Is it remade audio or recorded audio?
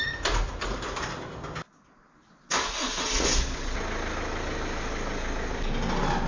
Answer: recorded